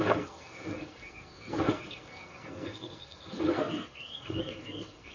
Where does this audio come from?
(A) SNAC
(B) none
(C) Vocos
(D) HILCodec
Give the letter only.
A